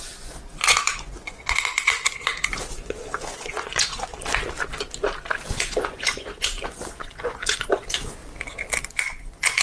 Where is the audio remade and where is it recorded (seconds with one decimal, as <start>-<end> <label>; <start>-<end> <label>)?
0.0-4.1 remade; 4.1-5.5 recorded; 5.5-8.2 remade; 8.2-8.9 recorded; 8.9-9.6 remade